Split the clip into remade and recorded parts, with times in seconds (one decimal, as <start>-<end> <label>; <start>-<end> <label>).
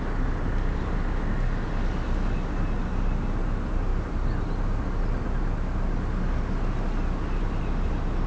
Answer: 0.0-8.3 recorded